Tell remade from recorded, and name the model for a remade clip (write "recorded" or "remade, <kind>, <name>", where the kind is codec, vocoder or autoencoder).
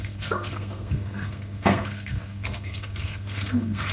remade, codec, SNAC